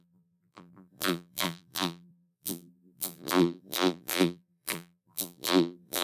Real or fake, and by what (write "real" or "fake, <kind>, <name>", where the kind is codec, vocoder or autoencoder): fake, vocoder, BigVGAN v2